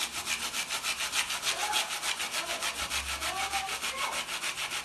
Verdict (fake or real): real